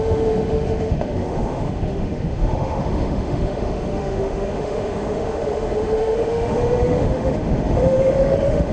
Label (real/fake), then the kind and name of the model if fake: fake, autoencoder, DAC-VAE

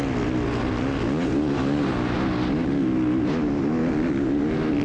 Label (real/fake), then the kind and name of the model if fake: real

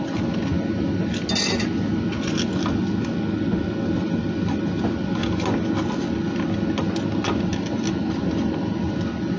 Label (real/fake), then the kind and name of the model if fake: real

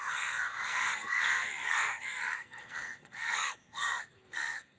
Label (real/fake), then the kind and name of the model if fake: fake, codec, SNAC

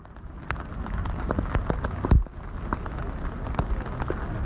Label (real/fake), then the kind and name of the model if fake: real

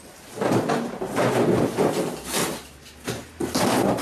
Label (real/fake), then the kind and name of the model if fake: real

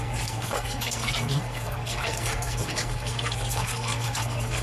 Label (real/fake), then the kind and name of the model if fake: fake, codec, SNAC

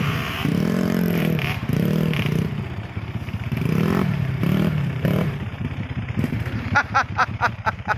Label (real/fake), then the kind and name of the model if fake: fake, vocoder, BigVGAN v2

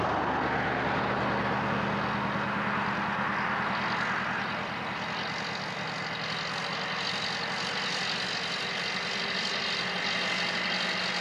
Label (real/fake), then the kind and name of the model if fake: real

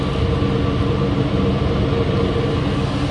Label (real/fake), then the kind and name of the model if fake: real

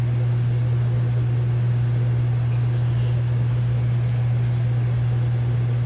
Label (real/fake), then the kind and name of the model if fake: real